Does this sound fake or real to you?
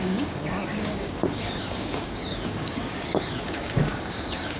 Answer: fake